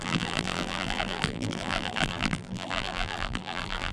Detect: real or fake fake